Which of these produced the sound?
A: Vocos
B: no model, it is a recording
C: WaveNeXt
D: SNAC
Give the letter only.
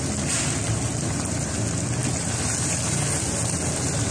B